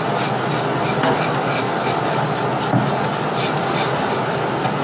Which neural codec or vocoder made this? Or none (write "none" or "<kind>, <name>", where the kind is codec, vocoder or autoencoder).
none